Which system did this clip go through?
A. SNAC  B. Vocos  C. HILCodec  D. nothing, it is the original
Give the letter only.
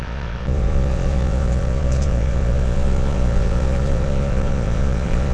B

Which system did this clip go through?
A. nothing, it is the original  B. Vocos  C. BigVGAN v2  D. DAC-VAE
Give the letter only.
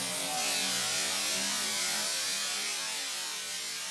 A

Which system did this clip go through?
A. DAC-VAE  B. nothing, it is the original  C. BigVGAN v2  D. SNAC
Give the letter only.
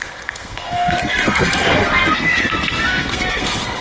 D